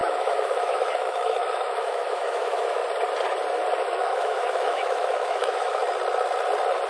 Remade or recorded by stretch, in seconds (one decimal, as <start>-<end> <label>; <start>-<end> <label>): 0.0-2.8 remade; 2.8-3.8 recorded; 3.8-5.8 remade; 5.8-6.9 recorded